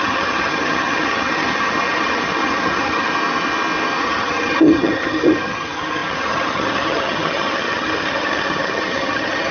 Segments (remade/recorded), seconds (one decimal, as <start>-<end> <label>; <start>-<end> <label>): 0.0-3.1 remade; 3.1-4.0 recorded; 4.0-9.5 remade